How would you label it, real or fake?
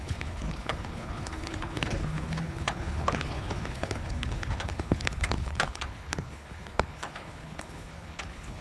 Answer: fake